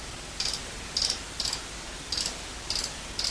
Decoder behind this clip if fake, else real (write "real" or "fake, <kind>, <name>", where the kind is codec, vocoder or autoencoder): real